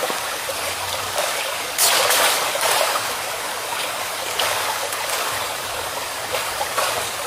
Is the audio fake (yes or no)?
yes